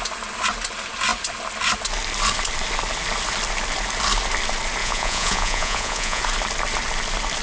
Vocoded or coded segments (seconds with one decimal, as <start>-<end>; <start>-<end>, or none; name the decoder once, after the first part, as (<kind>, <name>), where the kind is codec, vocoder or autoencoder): 4.8-6.2 (vocoder, Vocos)